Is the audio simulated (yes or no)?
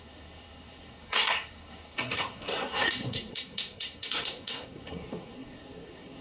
yes